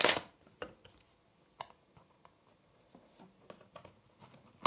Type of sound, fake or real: real